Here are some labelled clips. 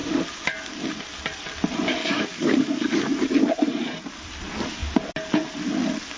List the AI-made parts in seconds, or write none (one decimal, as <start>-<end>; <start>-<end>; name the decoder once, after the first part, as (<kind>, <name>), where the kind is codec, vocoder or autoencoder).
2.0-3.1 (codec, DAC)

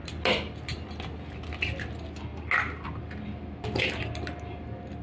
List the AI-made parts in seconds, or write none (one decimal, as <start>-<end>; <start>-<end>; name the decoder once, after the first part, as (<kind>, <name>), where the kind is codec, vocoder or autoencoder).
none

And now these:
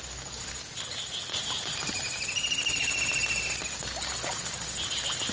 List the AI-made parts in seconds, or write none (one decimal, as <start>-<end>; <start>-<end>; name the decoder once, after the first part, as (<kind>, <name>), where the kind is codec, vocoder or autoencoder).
none

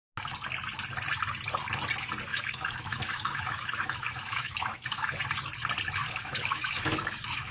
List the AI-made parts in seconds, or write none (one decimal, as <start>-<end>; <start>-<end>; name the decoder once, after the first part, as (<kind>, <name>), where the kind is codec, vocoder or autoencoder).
2.3-5.2 (autoencoder, DAC-VAE); 6.0-7.5

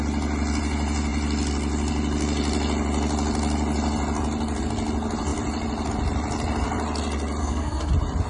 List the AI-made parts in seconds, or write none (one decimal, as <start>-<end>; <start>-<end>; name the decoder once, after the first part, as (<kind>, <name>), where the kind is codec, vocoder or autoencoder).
7.4-7.9 (codec, SNAC)

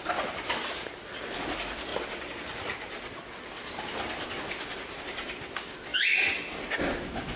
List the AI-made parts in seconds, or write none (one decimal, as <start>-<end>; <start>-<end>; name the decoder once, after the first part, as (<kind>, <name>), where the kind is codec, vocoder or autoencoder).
none

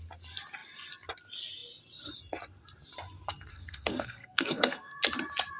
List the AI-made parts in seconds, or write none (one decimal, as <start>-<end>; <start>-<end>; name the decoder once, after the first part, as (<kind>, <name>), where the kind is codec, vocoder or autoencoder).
3.5-5.0 (codec, SNAC)

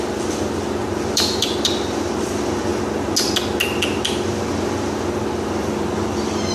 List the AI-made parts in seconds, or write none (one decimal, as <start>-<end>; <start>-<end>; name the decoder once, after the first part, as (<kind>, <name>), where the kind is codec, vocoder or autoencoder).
0.0-2.7 (vocoder, BigVGAN v2); 4.1-6.5